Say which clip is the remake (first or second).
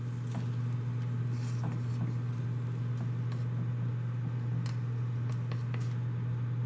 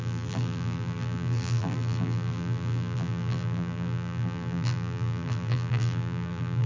second